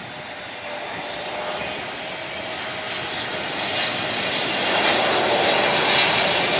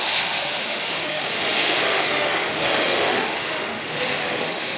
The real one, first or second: first